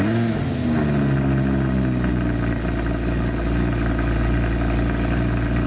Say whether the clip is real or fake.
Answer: real